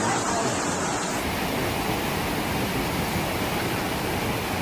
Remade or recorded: recorded